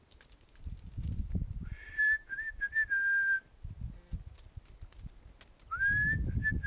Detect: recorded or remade recorded